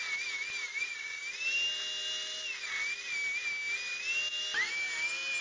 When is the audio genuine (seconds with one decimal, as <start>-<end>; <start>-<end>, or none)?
0.0-0.7; 1.2-5.4